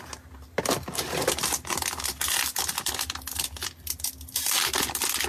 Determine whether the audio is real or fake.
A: real